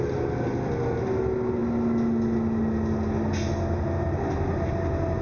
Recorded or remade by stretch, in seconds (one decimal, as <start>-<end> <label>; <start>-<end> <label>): 0.0-5.2 recorded